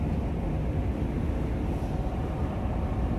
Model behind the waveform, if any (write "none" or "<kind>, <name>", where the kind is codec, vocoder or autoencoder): none